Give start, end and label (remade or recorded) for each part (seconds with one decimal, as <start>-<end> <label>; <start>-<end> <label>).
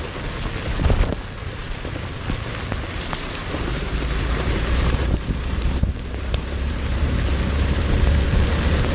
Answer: 0.0-1.4 recorded; 1.4-2.2 remade; 2.2-3.4 recorded; 3.4-7.8 remade; 7.8-8.9 recorded